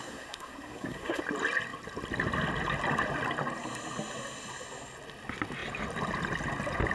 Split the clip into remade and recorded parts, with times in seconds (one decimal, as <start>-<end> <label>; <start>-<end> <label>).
0.0-1.2 remade; 1.2-6.9 recorded